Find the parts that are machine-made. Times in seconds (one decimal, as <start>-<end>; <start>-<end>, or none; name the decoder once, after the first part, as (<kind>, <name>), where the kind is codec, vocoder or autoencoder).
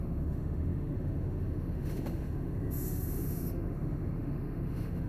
0.0-5.1 (autoencoder, DAC-VAE)